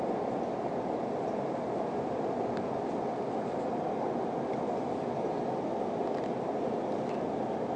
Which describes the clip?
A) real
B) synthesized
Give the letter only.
A